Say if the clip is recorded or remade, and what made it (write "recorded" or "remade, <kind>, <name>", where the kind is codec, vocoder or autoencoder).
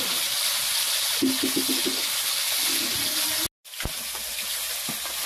recorded